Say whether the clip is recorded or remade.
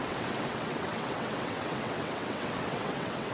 remade